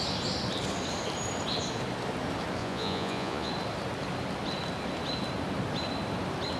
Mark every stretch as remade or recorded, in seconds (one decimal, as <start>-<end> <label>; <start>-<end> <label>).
0.0-2.6 recorded; 2.6-3.5 remade; 3.5-6.6 recorded

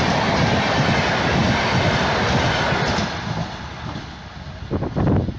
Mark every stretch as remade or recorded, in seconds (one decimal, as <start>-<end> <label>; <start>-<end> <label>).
0.0-5.4 recorded

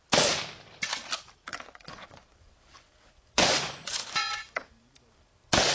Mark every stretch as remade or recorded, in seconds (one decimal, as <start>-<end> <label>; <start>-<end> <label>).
0.0-1.5 recorded; 1.5-4.7 remade; 4.7-5.7 recorded

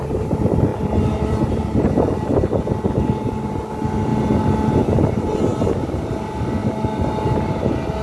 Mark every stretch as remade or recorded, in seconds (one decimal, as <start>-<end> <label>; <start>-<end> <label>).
0.0-0.7 recorded; 0.7-2.6 remade; 2.6-8.0 recorded

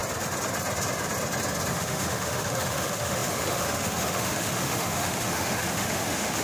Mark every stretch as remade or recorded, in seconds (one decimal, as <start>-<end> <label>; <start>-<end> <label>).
0.0-1.7 recorded; 1.7-6.4 remade

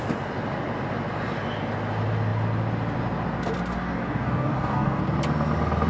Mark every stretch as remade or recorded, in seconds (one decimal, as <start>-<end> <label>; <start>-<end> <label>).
0.0-3.7 recorded; 3.7-5.0 remade; 5.0-5.9 recorded

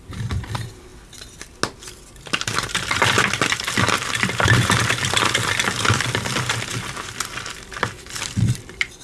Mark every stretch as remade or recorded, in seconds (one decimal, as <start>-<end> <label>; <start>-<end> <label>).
0.0-0.9 remade; 0.9-2.1 recorded; 2.1-9.0 remade